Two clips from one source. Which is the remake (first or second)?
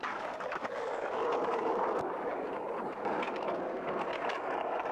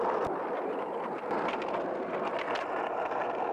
first